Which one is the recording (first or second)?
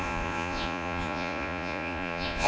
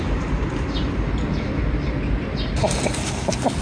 second